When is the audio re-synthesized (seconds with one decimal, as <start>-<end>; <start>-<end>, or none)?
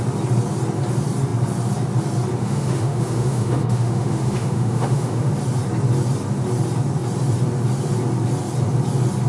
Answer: 2.4-5.3